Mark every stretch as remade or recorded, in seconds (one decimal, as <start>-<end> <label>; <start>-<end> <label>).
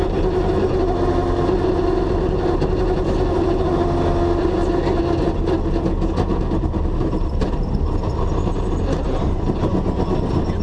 0.0-6.3 recorded; 6.3-9.3 remade; 9.3-10.6 recorded